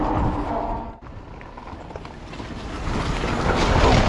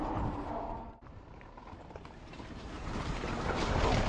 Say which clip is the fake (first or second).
second